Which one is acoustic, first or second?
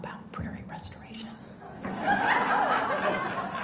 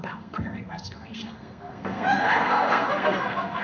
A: first